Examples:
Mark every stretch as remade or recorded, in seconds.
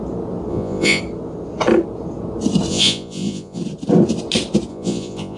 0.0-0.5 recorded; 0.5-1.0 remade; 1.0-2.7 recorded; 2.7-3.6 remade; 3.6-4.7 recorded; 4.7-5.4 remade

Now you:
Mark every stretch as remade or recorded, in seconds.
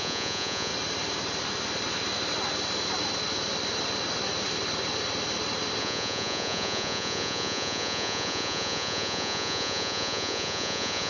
0.0-0.7 remade; 0.7-5.8 recorded; 5.8-11.1 remade